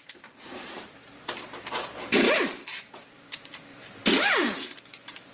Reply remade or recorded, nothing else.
remade